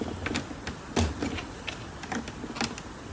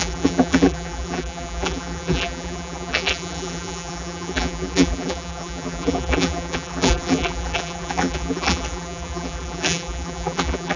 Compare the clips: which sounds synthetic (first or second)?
second